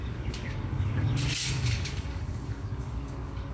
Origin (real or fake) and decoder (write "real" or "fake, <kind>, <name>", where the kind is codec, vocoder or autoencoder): fake, codec, DAC